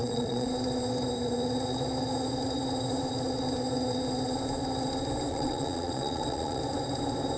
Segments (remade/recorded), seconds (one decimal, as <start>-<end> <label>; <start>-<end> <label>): 0.0-0.5 remade; 0.5-5.3 recorded; 5.3-6.6 remade; 6.6-7.4 recorded